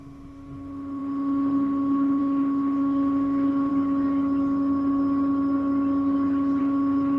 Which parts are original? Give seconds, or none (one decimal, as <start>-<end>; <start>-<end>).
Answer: 3.7-6.6